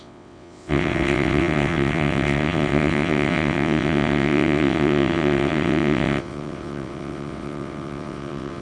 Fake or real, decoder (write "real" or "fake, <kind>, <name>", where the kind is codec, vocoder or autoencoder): fake, vocoder, WaveNeXt